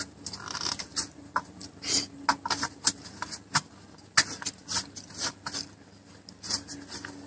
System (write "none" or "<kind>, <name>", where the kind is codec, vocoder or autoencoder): none